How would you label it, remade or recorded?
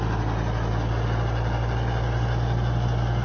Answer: recorded